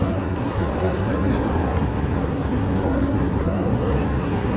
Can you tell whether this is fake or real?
fake